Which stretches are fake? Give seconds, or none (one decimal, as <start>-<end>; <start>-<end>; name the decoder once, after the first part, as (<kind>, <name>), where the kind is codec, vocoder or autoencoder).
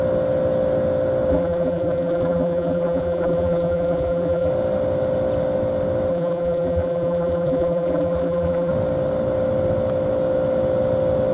1.3-4.5 (vocoder, BigVGAN v2); 6.1-8.7